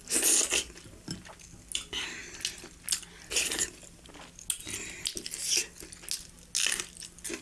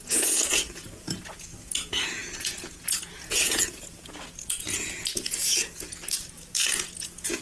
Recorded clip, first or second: first